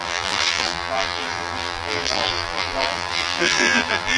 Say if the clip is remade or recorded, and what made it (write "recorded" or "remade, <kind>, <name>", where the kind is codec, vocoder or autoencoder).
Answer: remade, vocoder, BigVGAN v2